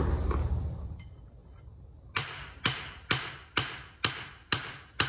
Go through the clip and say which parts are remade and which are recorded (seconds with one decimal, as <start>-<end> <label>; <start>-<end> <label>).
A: 0.0-5.1 recorded